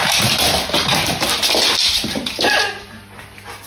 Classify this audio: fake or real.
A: real